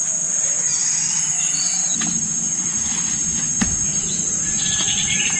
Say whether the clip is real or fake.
real